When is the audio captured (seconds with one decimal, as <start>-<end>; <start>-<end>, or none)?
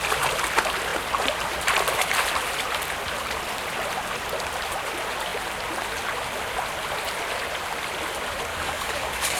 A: 0.0-8.5